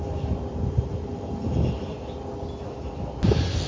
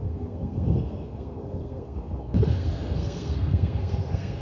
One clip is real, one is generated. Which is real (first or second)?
first